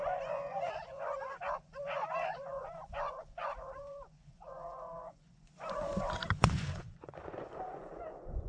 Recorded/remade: remade